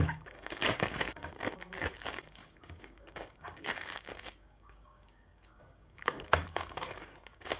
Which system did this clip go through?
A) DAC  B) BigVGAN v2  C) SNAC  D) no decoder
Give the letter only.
A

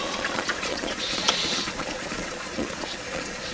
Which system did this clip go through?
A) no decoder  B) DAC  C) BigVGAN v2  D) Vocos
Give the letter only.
D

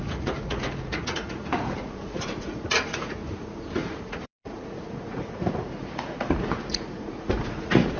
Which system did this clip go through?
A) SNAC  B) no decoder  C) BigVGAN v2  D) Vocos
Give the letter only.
D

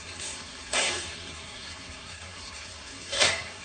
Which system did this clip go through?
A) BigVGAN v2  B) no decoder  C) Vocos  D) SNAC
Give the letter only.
D